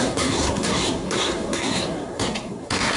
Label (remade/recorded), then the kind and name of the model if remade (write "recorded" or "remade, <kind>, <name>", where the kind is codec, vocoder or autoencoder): remade, codec, SNAC